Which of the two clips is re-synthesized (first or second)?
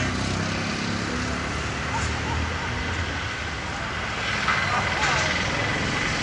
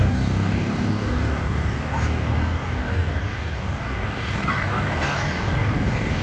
second